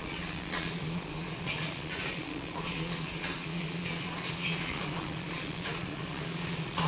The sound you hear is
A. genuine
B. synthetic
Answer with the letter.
B